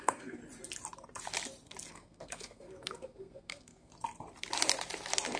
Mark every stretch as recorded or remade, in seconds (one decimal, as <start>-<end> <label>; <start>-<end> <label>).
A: 0.0-0.4 remade; 0.4-1.9 recorded; 1.9-3.9 remade; 3.9-5.4 recorded